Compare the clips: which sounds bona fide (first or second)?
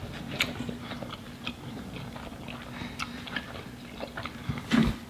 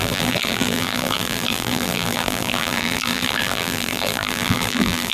first